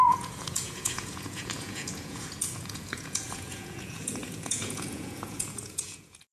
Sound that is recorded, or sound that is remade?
remade